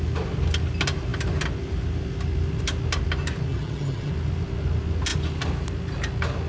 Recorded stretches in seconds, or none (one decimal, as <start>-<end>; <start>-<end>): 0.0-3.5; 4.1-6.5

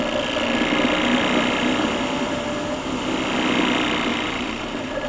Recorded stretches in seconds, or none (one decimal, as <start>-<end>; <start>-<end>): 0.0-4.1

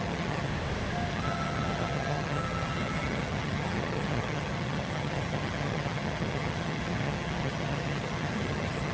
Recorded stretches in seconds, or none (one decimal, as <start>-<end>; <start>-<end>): 0.5-1.1

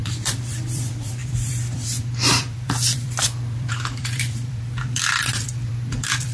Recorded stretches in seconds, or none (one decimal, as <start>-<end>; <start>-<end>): none

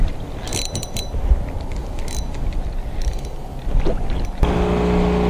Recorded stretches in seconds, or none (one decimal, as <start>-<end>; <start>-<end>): 0.0-5.3